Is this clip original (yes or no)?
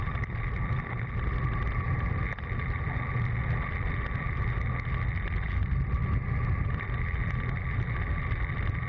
yes